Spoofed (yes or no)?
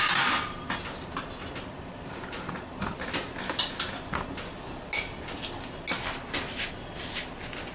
no